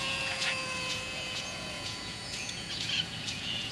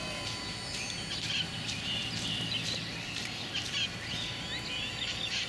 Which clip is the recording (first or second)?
second